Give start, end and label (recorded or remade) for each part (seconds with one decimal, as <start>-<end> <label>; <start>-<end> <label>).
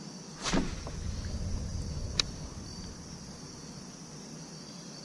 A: 0.0-5.0 recorded